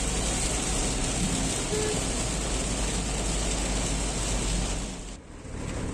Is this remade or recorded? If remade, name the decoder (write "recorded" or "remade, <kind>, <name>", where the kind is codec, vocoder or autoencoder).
recorded